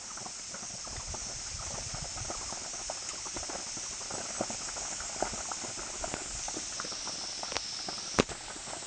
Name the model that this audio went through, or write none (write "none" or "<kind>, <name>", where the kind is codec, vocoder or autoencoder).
none